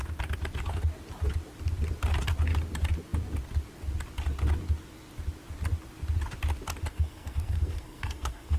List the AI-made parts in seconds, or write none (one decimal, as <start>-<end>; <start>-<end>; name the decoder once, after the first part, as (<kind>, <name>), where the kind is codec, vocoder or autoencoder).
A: 6.9-8.6 (codec, SNAC)

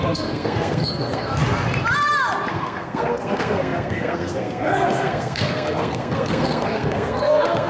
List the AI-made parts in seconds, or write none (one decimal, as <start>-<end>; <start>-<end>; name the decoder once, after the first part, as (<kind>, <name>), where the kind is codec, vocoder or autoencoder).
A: 0.0-1.4 (codec, SNAC); 2.5-7.7

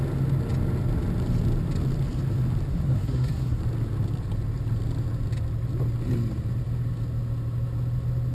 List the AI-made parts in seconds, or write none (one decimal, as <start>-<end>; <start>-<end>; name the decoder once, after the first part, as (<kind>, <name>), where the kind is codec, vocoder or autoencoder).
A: 2.7-3.6 (codec, SNAC)

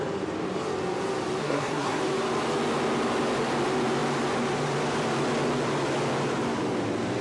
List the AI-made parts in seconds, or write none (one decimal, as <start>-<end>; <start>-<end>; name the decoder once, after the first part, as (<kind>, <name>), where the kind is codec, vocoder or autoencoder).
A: 1.4-2.0 (codec, SNAC)

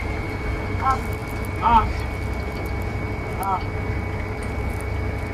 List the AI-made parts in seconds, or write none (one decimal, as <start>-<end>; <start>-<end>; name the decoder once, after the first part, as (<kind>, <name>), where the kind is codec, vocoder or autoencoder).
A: none